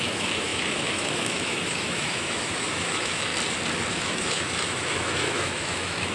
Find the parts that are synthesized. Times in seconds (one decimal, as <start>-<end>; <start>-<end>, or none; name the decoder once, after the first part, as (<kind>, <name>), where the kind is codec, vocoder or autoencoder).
0.0-3.3 (autoencoder, DAC-VAE); 3.9-6.1